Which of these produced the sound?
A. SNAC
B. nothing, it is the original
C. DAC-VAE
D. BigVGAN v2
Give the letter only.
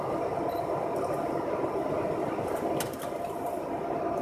B